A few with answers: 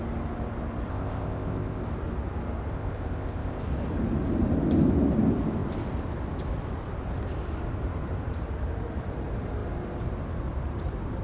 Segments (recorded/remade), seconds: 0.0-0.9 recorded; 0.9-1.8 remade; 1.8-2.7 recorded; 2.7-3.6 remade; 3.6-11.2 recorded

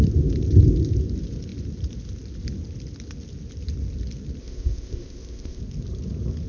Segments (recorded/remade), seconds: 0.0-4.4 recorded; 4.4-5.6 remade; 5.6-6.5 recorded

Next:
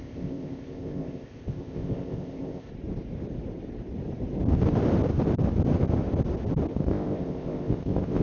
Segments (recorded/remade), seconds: 0.0-2.7 remade; 2.7-6.7 recorded; 6.7-8.2 remade